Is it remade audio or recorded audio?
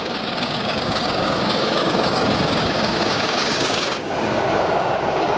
remade